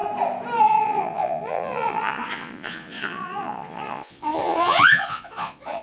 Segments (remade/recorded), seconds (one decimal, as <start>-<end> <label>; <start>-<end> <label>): 0.0-0.6 recorded; 0.6-5.8 remade